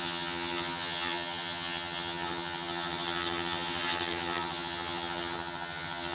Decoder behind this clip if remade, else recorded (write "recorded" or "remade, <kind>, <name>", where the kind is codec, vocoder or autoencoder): remade, vocoder, HiFi-GAN